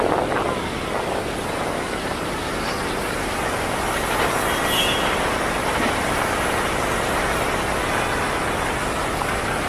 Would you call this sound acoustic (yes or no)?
yes